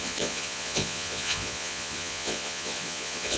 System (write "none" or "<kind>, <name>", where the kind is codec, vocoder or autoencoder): vocoder, Vocos